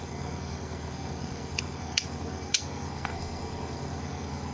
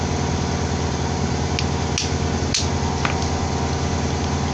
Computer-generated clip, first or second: first